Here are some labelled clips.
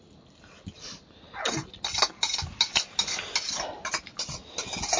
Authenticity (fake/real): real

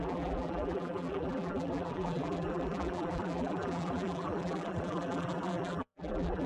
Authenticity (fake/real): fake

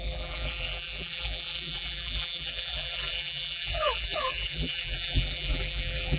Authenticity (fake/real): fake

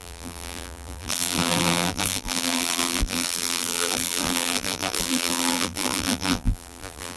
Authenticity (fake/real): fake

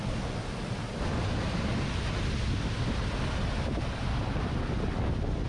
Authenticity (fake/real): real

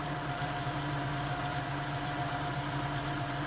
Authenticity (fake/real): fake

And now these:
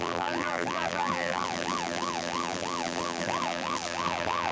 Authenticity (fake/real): fake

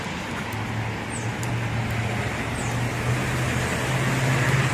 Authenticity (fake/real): real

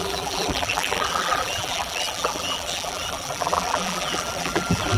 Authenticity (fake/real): fake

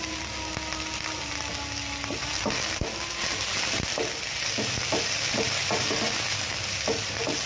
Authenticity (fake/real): real